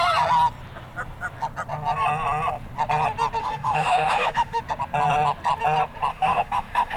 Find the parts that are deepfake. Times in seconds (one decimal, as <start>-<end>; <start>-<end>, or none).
3.4-4.6; 6.1-7.0